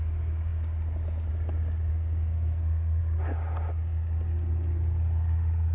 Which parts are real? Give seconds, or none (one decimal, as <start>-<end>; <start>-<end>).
0.0-1.9; 3.0-5.7